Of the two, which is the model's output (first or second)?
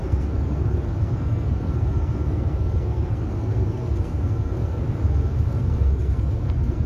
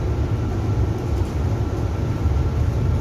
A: first